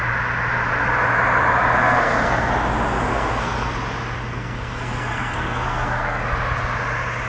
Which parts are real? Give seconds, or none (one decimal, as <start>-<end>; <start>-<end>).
0.0-1.7; 2.5-3.1; 3.7-4.3; 6.2-7.3